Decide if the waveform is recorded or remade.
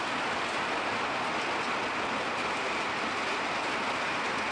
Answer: recorded